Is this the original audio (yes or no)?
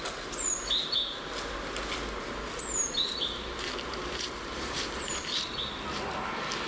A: yes